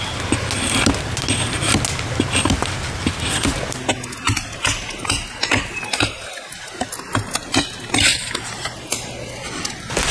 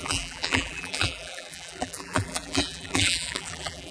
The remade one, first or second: second